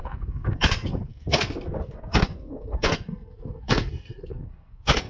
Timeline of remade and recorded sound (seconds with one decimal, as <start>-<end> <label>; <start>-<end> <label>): 0.0-5.1 remade